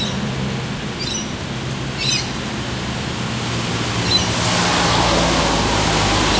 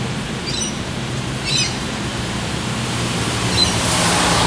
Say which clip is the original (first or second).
first